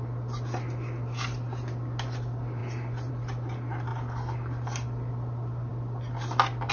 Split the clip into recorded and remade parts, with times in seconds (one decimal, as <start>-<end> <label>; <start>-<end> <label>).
0.0-6.7 recorded